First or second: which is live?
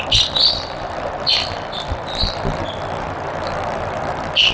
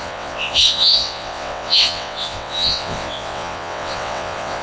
first